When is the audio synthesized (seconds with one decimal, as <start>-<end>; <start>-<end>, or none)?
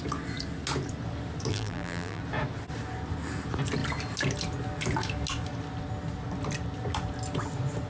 1.5-2.2